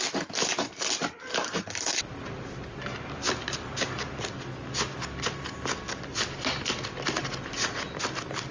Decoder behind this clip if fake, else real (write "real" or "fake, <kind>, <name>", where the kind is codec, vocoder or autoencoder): real